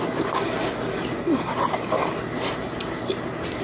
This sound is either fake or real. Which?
real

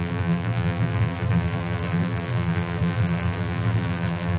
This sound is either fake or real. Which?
fake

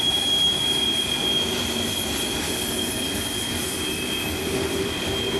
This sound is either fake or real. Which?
real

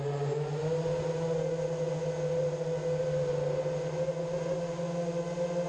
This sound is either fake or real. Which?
real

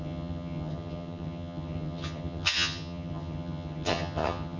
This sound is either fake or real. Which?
fake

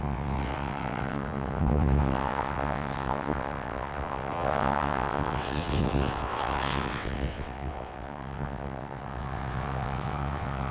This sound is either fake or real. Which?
fake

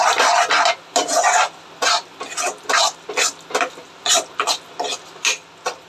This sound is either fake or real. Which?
real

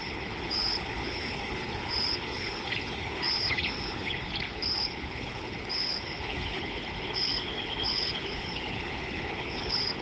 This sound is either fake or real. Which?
fake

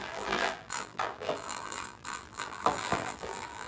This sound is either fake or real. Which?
fake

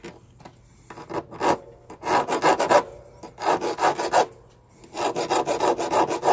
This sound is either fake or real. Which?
real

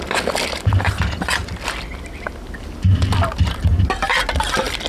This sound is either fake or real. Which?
real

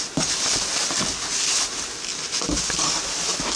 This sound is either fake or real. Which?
real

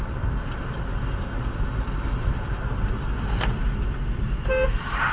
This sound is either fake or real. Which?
real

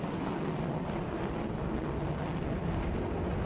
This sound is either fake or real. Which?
real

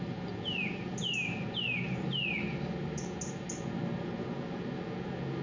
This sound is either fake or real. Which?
real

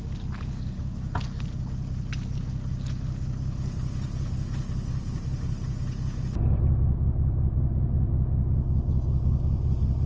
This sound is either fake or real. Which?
real